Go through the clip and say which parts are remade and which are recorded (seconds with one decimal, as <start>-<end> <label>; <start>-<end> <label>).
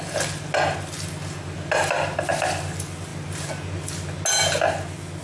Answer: 0.0-5.2 recorded